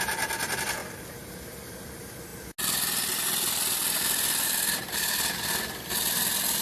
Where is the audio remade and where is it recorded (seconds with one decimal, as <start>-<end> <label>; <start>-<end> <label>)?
0.0-6.6 recorded